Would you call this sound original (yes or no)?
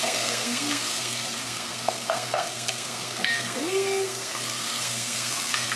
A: no